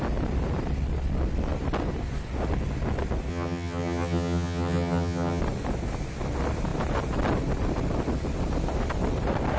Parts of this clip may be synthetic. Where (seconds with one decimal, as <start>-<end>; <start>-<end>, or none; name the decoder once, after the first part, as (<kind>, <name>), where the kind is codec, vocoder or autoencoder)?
3.3-5.4 (vocoder, HiFi-GAN)